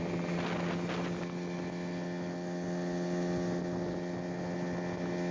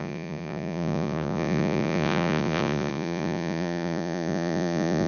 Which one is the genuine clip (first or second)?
first